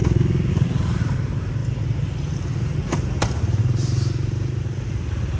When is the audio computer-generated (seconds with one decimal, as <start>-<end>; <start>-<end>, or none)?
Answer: 0.5-1.6; 3.6-5.4